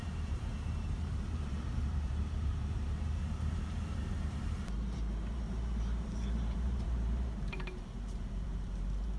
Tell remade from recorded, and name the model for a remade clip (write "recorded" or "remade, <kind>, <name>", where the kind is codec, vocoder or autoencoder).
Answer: remade, vocoder, BigVGAN v2